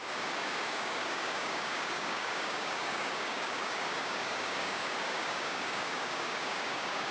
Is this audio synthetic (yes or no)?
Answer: yes